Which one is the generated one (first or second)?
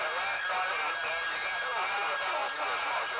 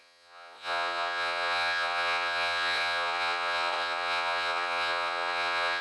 second